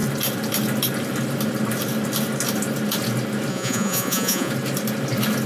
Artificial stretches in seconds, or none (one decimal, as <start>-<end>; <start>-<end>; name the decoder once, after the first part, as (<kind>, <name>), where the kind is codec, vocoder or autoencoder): 3.5-4.5 (vocoder, Vocos)